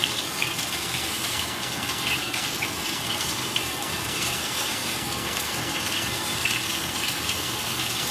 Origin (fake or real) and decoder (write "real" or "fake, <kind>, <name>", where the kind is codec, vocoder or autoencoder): fake, codec, SNAC